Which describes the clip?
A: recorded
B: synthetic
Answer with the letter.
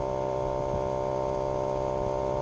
A